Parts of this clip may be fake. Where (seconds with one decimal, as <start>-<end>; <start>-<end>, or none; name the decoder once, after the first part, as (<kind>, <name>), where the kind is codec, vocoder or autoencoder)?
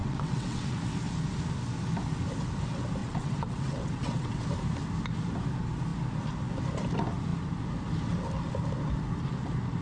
0.0-0.7 (vocoder, WaveNeXt); 3.0-4.4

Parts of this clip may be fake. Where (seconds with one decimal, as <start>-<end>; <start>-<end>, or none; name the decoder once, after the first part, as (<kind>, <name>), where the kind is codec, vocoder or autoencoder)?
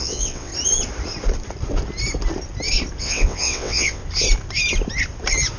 0.0-0.5 (vocoder, WaveNeXt); 3.0-4.0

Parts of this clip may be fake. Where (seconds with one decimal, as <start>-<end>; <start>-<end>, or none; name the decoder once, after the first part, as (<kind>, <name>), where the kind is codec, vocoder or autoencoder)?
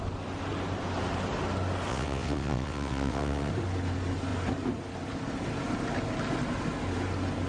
1.9-3.5 (vocoder, WaveNeXt)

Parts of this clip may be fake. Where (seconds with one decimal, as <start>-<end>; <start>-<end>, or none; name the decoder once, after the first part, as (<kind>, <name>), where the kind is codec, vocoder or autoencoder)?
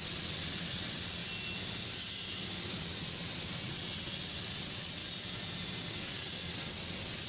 0.0-1.2 (vocoder, WaveNeXt); 2.6-5.0; 5.9-7.3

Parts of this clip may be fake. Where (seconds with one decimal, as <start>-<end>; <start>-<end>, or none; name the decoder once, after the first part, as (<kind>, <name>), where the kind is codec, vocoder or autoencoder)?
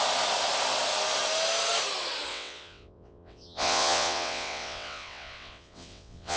2.3-6.4 (vocoder, WaveNeXt)